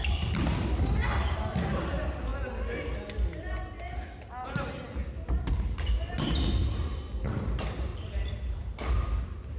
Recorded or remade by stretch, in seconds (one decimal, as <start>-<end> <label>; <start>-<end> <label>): 0.0-1.0 recorded; 1.0-1.9 remade; 1.9-9.6 recorded